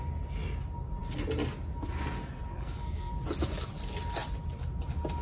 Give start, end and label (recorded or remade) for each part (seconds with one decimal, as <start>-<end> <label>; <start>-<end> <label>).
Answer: 0.0-2.5 recorded; 2.5-3.1 remade; 3.1-5.2 recorded